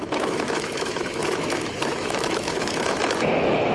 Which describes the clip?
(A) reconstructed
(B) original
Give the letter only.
A